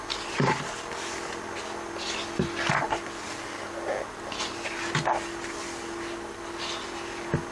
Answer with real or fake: real